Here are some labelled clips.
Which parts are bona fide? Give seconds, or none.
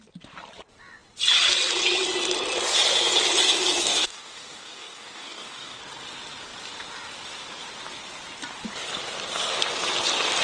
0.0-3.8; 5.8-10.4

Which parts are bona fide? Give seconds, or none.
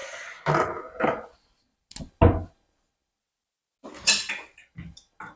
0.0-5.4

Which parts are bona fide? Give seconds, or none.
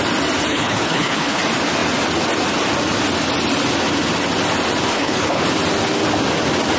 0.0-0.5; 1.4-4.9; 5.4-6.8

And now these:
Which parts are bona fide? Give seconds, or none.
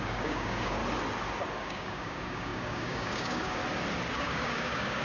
0.8-1.6; 3.6-4.1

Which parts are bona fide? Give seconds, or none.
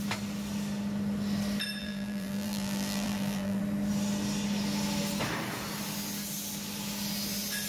0.0-1.8; 3.6-7.7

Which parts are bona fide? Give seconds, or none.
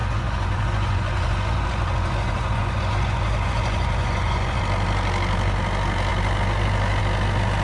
4.6-7.6